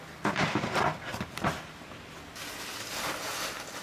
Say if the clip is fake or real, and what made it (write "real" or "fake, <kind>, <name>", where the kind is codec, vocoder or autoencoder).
real